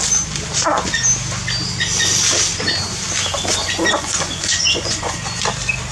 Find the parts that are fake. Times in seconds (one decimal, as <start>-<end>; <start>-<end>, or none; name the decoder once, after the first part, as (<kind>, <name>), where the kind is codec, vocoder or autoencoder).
3.6-5.4 (vocoder, Vocos)